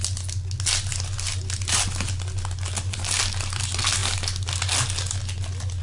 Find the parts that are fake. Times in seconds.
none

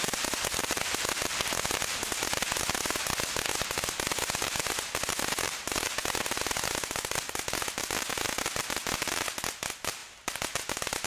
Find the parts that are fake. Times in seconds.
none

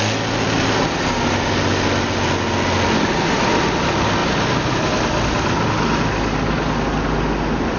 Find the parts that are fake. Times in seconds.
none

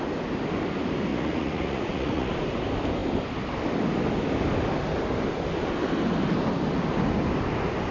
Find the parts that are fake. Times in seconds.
1.1-2.3 (vocoder, Vocos)

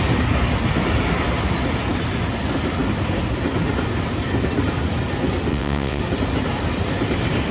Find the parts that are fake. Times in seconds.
5.5-6.0 (vocoder, WaveNeXt)